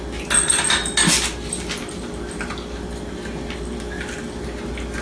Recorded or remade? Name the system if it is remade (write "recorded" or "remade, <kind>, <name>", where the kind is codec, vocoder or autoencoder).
recorded